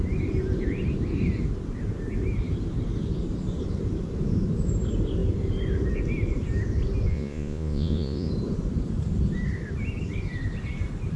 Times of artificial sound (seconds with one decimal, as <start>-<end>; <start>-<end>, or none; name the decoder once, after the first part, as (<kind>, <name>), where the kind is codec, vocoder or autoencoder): 7.1-8.3 (vocoder, Vocos)